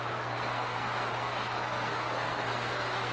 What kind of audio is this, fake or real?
fake